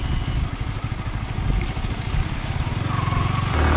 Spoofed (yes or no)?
no